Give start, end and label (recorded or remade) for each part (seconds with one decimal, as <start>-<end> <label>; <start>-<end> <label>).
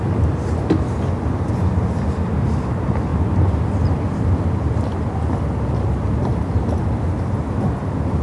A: 0.0-8.2 recorded